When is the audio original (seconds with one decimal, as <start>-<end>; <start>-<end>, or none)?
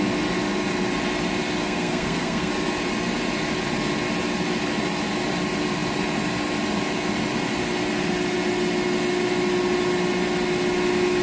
0.0-1.6; 2.5-11.2